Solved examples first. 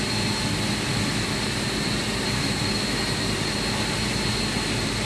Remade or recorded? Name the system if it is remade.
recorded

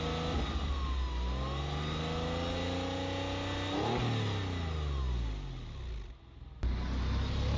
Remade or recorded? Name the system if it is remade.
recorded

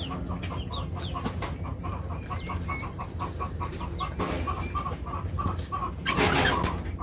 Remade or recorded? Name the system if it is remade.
recorded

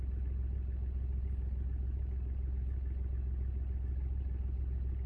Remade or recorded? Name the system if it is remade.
recorded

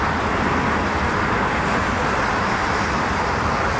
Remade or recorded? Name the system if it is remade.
recorded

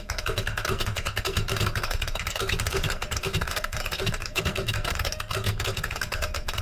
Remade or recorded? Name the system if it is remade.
remade, codec, SNAC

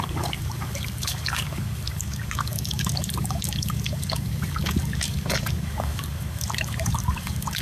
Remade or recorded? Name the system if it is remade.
remade, codec, DAC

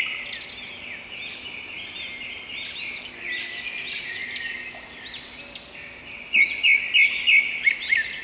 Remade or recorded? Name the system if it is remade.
recorded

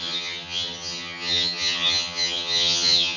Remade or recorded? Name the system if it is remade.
remade, vocoder, HiFi-GAN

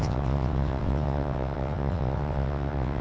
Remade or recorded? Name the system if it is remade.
remade, vocoder, WaveNeXt